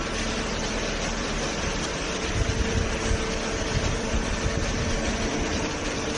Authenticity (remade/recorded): remade